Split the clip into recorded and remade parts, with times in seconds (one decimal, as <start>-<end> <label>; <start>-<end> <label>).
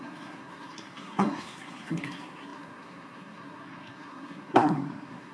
0.0-5.3 remade